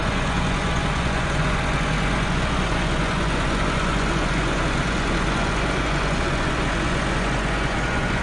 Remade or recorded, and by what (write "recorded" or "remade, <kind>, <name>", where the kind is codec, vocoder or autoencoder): remade, vocoder, Vocos